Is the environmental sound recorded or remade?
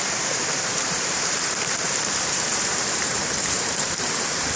remade